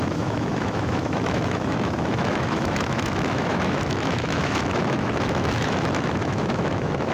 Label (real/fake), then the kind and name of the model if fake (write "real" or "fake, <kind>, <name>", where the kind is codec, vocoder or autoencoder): fake, autoencoder, DAC-VAE